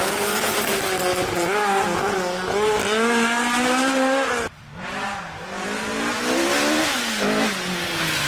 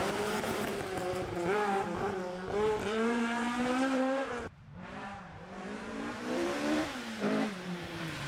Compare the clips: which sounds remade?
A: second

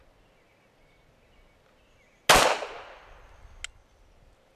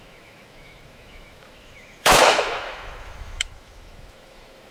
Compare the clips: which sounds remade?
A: second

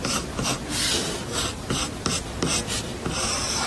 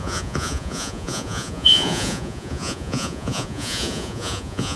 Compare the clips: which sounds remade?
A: second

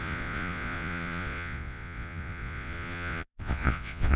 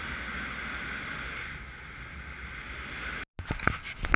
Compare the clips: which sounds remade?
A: first